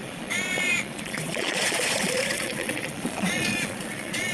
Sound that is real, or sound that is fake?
fake